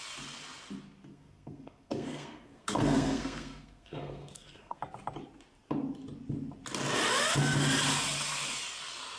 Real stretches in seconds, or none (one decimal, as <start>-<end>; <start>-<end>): 0.0-1.1; 4.8-9.2